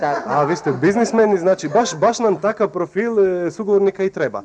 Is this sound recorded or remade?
recorded